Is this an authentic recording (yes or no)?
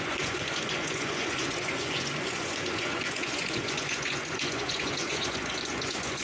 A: no